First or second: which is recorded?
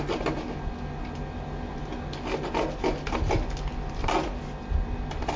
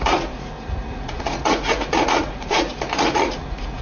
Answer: first